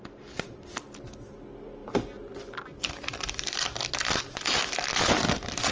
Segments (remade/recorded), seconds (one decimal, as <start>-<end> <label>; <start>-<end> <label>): 0.0-5.7 recorded